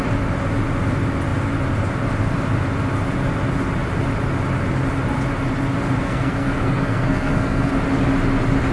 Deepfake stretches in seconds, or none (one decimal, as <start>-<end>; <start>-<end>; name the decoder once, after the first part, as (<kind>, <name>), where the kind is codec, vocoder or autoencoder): 6.0-7.7 (codec, SNAC)